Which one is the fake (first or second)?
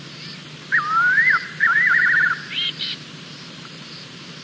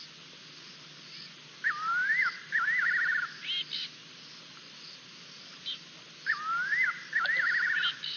first